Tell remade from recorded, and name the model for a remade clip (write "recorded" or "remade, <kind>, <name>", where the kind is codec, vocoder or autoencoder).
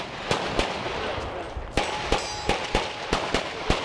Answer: recorded